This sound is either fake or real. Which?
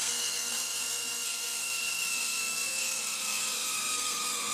fake